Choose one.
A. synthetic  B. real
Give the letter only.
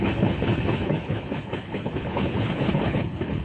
A